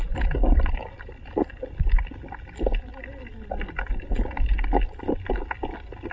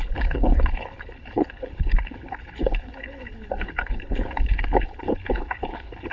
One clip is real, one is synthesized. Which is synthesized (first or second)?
second